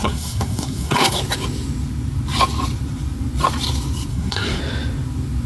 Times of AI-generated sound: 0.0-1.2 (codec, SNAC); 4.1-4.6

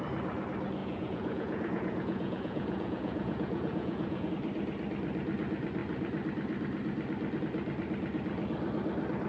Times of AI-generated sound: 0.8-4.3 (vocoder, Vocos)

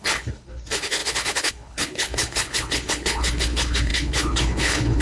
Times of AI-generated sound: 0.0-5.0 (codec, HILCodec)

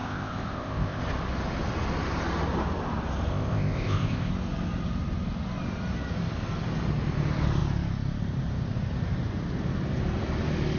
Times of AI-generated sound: 0.0-1.0 (codec, ZipCodec); 3.3-4.3